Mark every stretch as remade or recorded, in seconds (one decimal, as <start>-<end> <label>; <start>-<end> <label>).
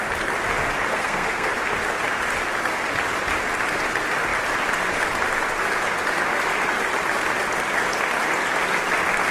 0.0-0.9 recorded; 0.9-1.5 remade; 1.5-9.3 recorded